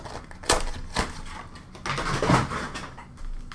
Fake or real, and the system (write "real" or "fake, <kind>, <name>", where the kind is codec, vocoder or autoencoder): real